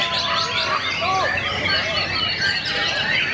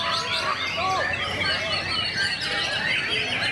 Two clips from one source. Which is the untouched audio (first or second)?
second